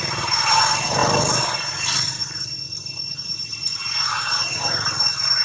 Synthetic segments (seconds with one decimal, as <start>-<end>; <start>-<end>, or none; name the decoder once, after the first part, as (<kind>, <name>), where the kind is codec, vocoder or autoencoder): none